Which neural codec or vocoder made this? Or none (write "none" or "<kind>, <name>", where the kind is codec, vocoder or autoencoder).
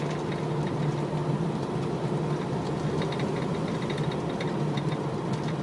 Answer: none